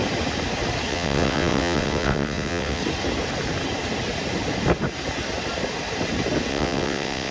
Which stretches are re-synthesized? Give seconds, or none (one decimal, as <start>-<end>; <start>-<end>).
0.9-2.8; 6.5-7.3